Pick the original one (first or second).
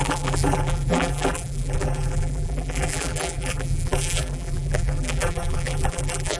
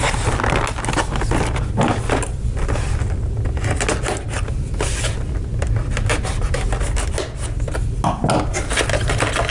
second